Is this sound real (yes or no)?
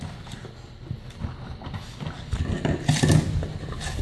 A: yes